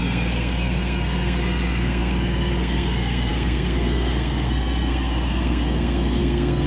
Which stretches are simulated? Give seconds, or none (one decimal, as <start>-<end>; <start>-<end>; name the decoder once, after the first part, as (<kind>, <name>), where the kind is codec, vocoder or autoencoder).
0.0-6.7 (codec, SNAC)